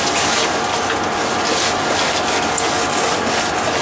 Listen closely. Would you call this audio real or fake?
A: real